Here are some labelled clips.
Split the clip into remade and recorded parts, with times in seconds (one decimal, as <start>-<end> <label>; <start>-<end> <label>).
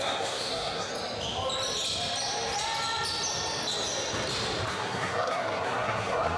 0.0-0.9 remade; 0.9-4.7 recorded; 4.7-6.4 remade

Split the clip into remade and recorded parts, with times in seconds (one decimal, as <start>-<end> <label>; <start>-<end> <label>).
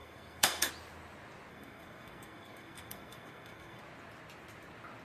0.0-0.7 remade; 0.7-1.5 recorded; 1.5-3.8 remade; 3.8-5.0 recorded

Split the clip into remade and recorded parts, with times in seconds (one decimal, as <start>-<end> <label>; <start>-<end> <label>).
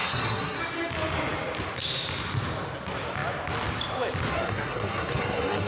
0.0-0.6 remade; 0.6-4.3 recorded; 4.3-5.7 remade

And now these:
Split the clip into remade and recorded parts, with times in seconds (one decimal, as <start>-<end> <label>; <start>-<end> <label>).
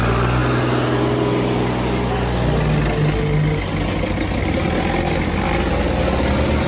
0.0-6.7 recorded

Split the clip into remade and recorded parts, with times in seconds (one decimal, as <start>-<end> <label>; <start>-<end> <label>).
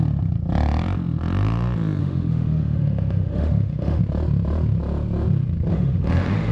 0.0-2.0 recorded; 2.0-4.0 remade; 4.0-5.7 recorded; 5.7-6.5 remade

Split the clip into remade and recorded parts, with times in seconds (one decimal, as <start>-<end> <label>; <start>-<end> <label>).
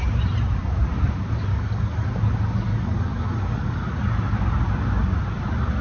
0.0-1.5 recorded; 1.5-2.1 remade; 2.1-2.7 recorded; 2.7-4.0 remade; 4.0-5.8 recorded